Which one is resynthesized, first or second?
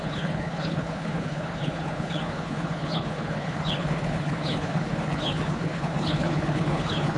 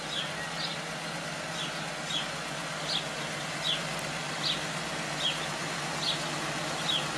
first